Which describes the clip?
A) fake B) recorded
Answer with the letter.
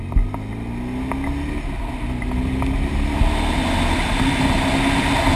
B